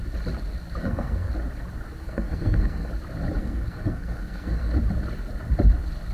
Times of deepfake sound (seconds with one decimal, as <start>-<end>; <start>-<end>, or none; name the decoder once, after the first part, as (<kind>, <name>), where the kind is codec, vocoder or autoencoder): 0.8-1.3 (codec, SNAC); 2.0-2.9; 3.4-4.7